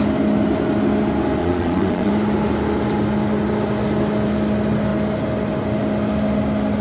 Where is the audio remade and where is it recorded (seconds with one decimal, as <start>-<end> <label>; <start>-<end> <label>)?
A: 0.0-1.4 recorded; 1.4-2.1 remade; 2.1-6.8 recorded